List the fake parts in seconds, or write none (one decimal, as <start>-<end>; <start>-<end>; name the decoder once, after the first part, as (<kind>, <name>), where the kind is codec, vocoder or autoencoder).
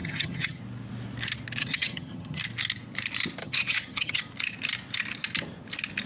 0.0-0.6 (vocoder, HiFi-GAN); 1.6-2.4; 3.4-4.2